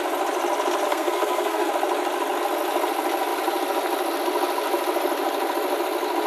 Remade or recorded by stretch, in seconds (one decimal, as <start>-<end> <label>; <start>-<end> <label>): 0.0-0.9 recorded; 0.9-1.7 remade; 1.7-6.3 recorded